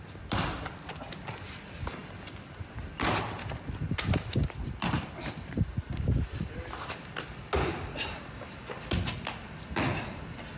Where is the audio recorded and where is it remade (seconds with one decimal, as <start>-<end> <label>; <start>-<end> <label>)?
0.0-10.6 recorded